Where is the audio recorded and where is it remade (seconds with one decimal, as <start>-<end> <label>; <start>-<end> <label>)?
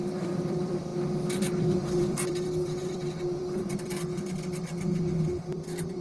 0.0-0.9 remade; 0.9-1.4 recorded; 1.4-6.0 remade